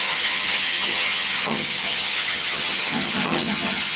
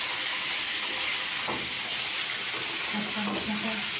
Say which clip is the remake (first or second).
first